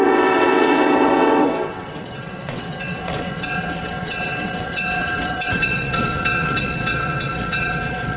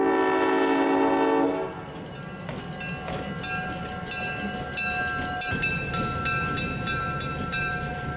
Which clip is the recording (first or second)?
second